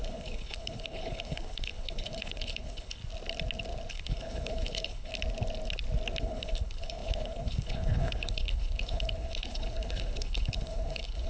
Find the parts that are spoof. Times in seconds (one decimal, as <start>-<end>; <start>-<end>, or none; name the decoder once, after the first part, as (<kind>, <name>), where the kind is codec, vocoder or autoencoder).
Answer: 0.0-3.0 (codec, HILCodec); 3.9-5.1; 6.2-11.3